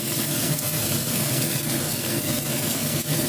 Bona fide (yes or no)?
no